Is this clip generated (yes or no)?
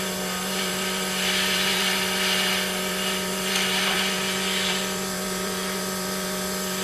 yes